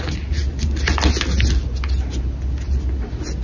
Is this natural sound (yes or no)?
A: yes